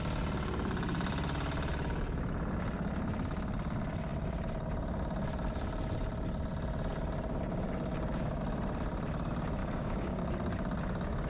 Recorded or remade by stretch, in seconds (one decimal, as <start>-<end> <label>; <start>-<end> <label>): 0.0-9.6 recorded; 9.6-10.2 remade; 10.2-11.3 recorded